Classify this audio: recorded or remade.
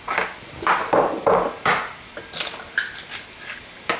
recorded